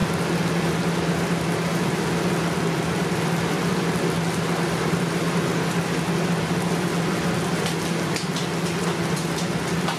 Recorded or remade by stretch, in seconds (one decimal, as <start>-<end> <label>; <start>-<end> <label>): 0.0-10.0 recorded

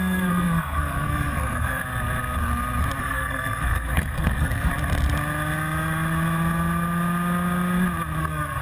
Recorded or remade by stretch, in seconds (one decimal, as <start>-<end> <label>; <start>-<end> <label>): 0.0-1.8 remade; 1.8-3.0 recorded; 3.0-4.7 remade; 4.7-8.2 recorded; 8.2-8.6 remade

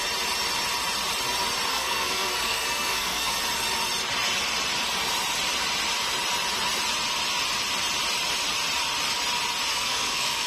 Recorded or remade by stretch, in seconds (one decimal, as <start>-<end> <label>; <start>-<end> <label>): 0.0-1.7 recorded; 1.7-3.3 remade; 3.3-9.7 recorded; 9.7-10.5 remade

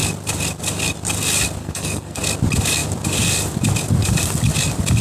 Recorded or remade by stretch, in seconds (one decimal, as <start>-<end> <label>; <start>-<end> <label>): 0.0-1.6 recorded; 1.6-2.2 remade; 2.2-5.0 recorded

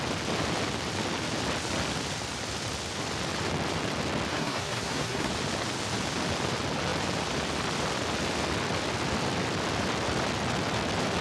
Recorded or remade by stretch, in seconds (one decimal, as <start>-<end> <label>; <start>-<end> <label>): 0.0-4.3 recorded; 4.3-5.3 remade; 5.3-11.2 recorded

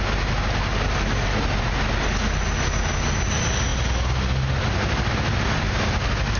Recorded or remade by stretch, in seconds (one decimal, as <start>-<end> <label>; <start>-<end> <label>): 0.0-6.4 recorded

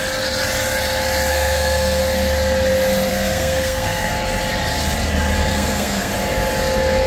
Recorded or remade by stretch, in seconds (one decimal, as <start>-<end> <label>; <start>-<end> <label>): 0.0-1.3 recorded; 1.3-2.0 remade; 2.0-3.1 recorded; 3.1-4.1 remade; 4.1-5.5 recorded; 5.5-6.1 remade; 6.1-7.1 recorded

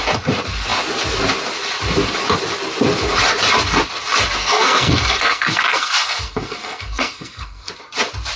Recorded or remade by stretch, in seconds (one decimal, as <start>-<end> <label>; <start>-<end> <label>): 0.0-4.4 recorded; 4.4-7.7 remade; 7.7-8.4 recorded